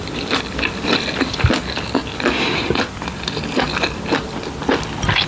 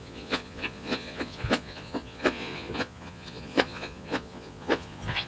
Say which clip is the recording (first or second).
first